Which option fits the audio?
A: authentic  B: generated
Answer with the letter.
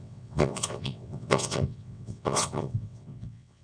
B